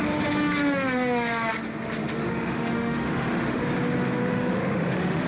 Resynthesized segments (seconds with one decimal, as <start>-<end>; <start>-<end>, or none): 2.0-3.6; 4.2-5.3